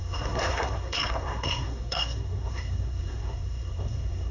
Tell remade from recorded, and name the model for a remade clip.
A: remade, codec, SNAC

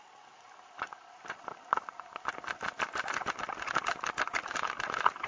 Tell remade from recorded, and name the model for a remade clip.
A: recorded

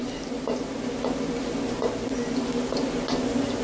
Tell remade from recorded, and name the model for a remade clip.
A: recorded